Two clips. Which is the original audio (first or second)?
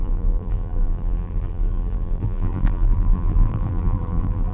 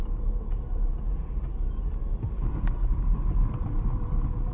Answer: second